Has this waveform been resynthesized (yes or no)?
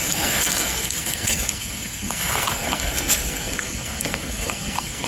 yes